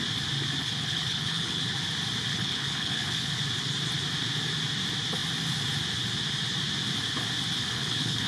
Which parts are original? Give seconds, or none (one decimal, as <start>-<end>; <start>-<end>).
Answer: 0.0-0.6; 1.7-2.3; 3.4-7.7